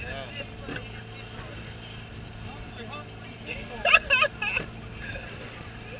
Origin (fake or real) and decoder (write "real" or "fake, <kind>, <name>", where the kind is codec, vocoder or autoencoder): real